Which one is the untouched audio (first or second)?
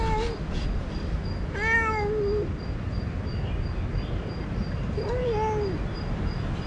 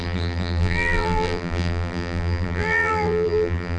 first